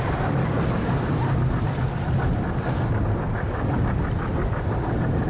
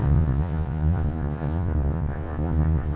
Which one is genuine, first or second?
first